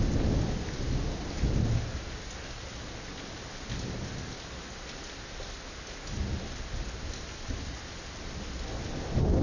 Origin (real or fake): real